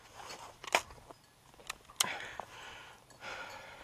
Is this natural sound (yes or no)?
yes